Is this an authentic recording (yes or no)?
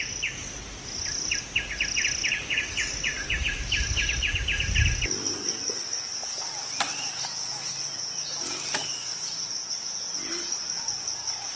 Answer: yes